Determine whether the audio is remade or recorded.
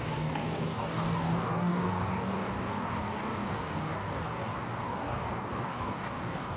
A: remade